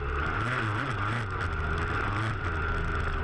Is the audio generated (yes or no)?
no